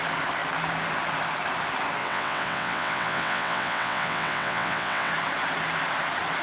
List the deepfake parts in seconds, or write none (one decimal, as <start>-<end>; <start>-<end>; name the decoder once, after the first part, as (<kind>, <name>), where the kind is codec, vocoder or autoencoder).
2.0-5.1 (vocoder, WaveNeXt)